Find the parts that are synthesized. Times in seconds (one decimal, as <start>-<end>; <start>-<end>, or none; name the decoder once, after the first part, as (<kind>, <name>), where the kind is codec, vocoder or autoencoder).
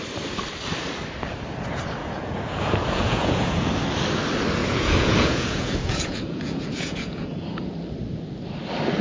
2.0-3.7 (vocoder, Vocos); 4.6-7.7